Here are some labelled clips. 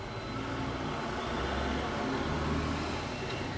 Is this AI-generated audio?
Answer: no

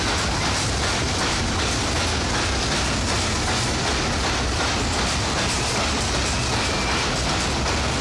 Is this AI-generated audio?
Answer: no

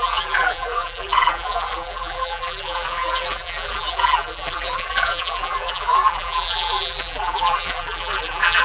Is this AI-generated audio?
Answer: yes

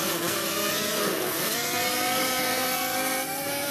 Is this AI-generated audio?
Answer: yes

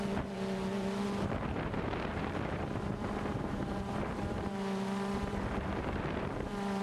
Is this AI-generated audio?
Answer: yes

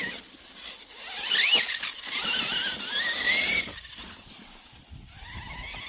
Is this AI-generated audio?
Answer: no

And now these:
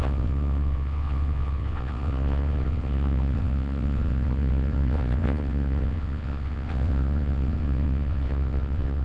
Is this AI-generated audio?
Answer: yes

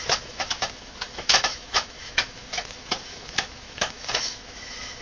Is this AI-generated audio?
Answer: yes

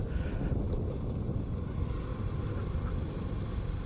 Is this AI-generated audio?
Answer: no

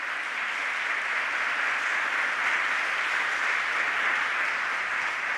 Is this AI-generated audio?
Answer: no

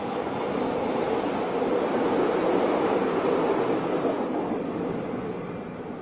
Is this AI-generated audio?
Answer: no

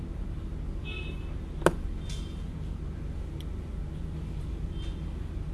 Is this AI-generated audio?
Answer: no